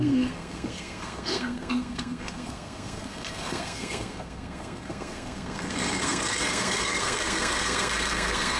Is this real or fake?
fake